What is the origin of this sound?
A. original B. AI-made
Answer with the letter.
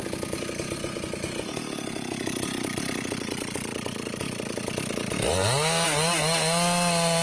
A